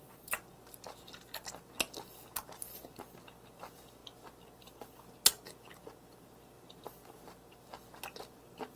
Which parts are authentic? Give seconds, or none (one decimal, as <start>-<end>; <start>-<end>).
0.0-8.8